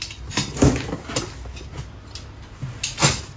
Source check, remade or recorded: recorded